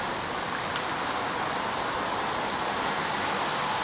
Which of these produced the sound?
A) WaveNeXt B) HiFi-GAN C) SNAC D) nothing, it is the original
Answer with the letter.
D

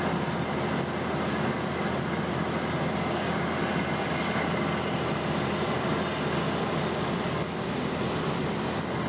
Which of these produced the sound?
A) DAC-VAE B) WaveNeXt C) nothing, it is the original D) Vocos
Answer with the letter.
C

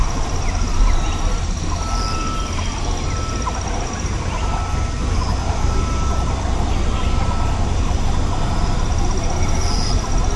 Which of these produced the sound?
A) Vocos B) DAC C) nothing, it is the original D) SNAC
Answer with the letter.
C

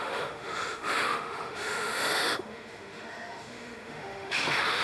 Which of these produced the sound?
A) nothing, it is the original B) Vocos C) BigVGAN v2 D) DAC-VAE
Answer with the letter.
D